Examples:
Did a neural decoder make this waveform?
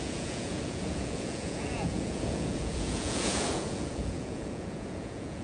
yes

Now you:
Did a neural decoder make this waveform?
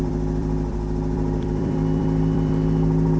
yes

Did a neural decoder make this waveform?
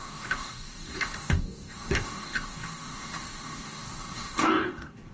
yes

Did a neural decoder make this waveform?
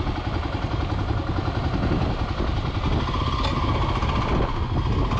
no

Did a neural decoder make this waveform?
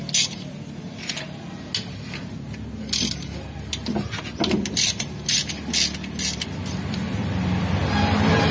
no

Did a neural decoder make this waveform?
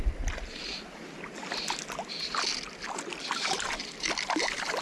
no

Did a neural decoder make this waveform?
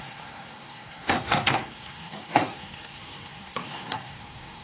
yes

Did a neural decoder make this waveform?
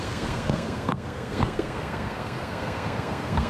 yes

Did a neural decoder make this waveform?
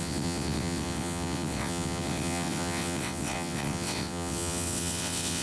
yes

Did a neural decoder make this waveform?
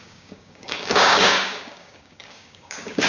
yes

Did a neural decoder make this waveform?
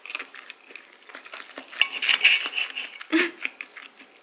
no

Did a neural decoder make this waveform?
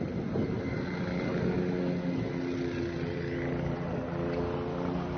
no